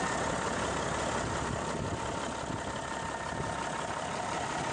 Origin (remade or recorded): recorded